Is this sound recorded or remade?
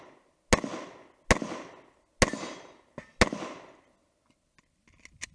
recorded